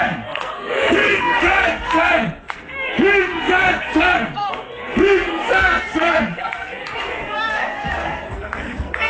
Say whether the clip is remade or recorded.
remade